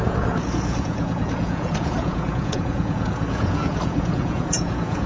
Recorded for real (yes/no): no